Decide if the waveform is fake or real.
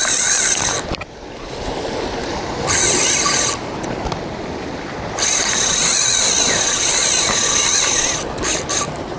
fake